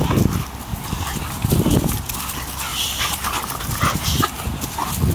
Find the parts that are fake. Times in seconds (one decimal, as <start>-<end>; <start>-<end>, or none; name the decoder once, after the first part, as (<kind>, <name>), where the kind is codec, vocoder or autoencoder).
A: 0.7-1.7 (vocoder, BigVGAN v2); 2.7-4.4